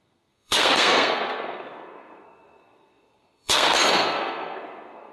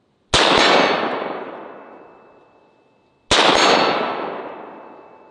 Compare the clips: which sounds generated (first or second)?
first